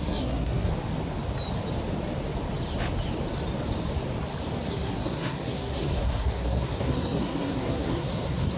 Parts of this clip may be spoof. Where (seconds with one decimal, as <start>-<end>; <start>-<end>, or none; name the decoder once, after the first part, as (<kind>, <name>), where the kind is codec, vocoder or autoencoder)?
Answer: 0.0-0.7 (codec, SNAC); 4.7-8.6